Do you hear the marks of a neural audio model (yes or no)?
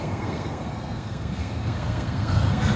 yes